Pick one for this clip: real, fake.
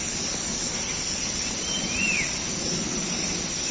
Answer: real